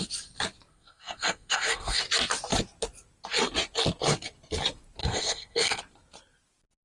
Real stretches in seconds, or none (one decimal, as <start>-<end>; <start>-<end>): 0.0-0.7; 2.0-5.0; 5.8-6.8